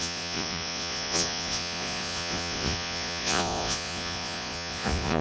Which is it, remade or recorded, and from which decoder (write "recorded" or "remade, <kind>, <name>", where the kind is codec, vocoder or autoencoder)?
remade, vocoder, Vocos